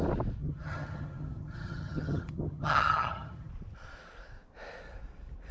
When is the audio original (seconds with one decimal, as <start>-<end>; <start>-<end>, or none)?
0.0-0.4; 3.5-5.5